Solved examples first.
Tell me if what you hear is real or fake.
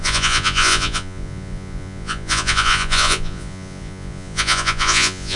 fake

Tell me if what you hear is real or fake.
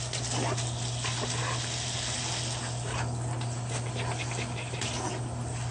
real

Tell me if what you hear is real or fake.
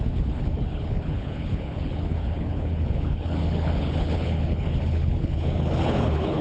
fake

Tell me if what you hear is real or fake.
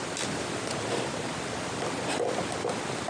real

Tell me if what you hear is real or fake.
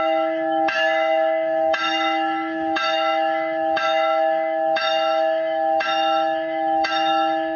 fake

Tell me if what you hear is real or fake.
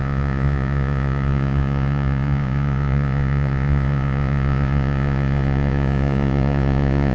fake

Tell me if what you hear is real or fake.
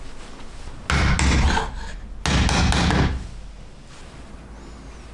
real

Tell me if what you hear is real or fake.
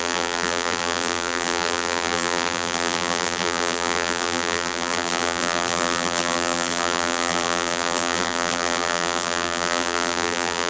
fake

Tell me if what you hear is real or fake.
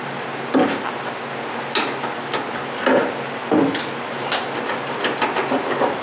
real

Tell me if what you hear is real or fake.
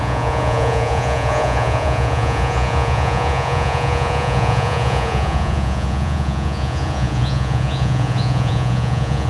fake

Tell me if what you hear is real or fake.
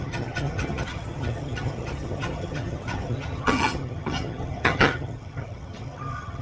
fake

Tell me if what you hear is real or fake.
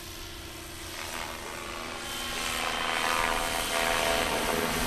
real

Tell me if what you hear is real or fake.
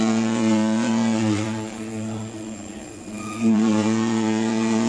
fake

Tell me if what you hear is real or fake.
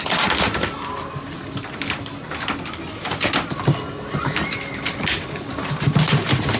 real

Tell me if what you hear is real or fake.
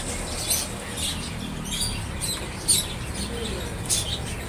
real